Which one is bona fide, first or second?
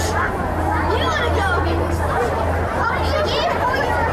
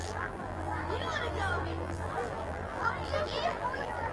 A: first